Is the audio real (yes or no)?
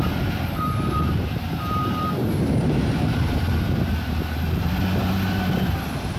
no